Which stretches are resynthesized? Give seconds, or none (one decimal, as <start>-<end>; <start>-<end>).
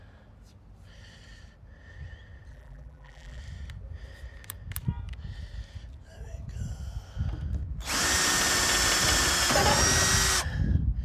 2.5-3.4